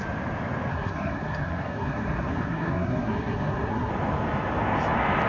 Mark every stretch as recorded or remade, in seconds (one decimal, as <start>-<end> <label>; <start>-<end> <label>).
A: 0.0-0.7 recorded; 0.7-3.9 remade; 3.9-5.3 recorded